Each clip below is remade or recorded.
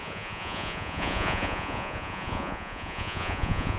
remade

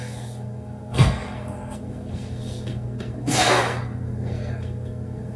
remade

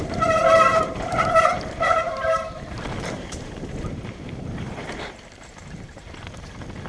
remade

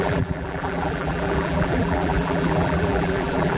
remade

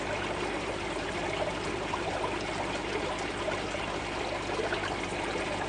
recorded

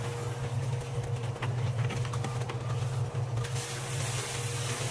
recorded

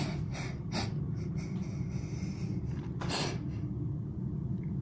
recorded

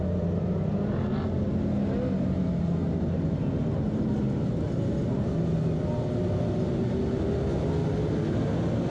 recorded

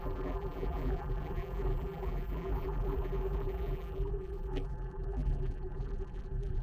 remade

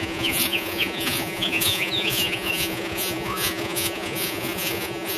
remade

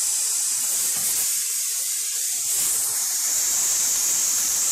remade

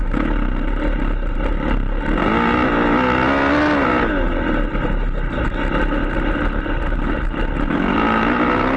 recorded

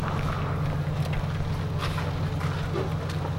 recorded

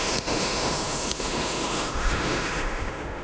remade